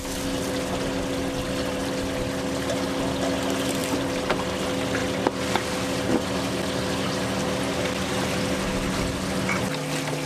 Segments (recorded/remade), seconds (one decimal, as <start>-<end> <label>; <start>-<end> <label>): 0.0-10.3 recorded

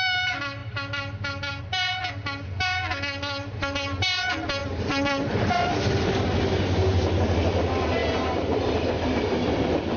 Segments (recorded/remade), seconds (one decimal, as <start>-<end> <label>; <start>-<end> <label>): 0.0-4.6 recorded; 4.6-5.7 remade; 5.7-8.0 recorded; 8.0-8.6 remade; 8.6-10.0 recorded